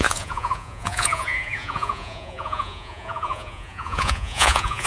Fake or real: fake